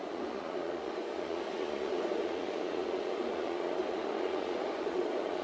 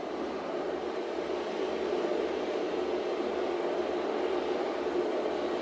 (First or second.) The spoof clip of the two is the first